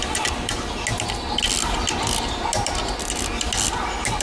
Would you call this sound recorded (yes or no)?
yes